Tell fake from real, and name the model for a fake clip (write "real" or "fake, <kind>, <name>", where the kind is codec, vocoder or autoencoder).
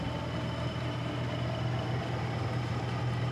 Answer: real